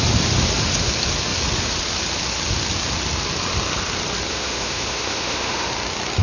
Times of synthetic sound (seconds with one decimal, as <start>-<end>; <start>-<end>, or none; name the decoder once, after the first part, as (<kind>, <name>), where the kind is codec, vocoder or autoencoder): 4.3-5.7 (autoencoder, DAC-VAE)